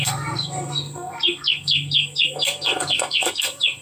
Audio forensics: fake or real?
fake